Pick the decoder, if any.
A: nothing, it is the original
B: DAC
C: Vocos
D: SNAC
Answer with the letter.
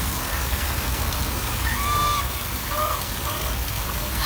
D